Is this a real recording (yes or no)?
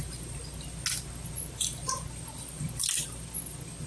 yes